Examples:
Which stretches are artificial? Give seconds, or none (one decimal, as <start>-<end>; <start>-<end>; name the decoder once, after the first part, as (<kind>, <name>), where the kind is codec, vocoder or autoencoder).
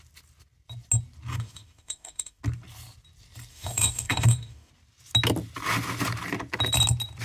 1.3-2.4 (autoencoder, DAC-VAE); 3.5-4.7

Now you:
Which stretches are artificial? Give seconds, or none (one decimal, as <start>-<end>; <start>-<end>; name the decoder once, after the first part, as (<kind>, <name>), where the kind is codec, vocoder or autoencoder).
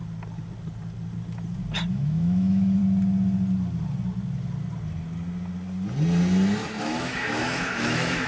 1.9-2.8 (autoencoder, DAC-VAE); 6.8-8.3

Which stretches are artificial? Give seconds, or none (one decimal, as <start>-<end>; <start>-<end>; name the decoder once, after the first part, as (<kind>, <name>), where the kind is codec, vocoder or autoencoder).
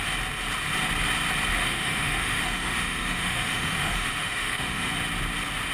1.5-4.9 (autoencoder, DAC-VAE)